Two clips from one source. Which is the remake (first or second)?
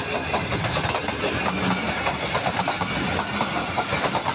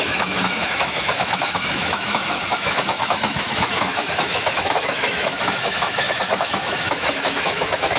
second